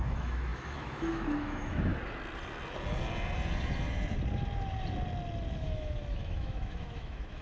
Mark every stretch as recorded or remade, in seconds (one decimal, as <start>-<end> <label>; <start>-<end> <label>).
0.0-1.9 remade; 1.9-5.6 recorded; 5.6-7.4 remade